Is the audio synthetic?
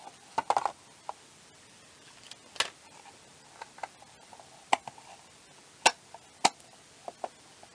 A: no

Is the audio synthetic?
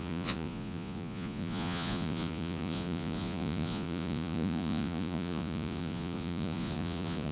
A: yes